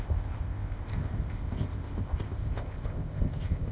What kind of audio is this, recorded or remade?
remade